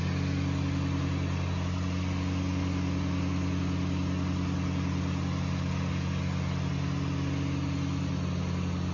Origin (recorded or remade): recorded